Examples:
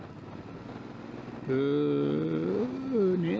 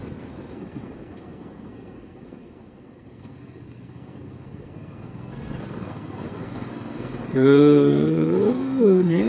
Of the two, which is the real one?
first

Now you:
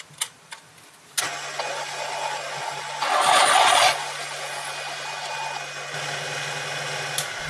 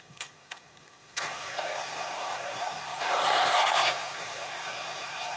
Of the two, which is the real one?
first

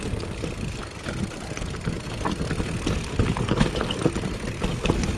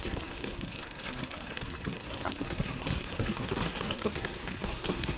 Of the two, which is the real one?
first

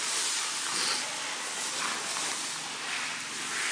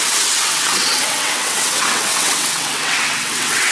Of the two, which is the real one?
first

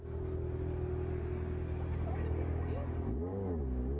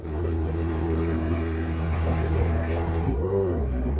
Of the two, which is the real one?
first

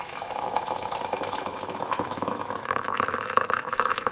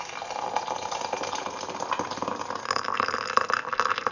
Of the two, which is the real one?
second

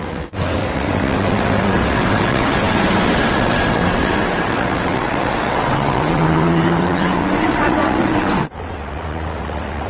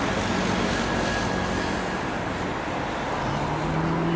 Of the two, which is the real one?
second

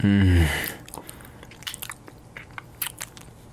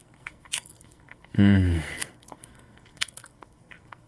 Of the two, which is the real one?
first